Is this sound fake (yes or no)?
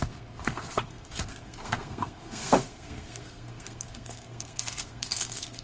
yes